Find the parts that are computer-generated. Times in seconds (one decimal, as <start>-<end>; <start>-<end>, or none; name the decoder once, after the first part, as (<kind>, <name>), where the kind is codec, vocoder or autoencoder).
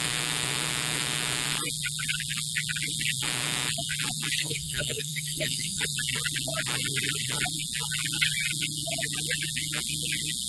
4.4-5.8 (codec, SNAC)